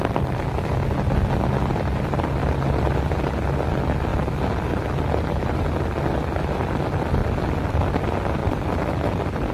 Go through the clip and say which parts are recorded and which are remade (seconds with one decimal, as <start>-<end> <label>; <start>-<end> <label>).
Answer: 0.0-2.4 recorded; 2.4-3.1 remade; 3.1-8.4 recorded; 8.4-9.5 remade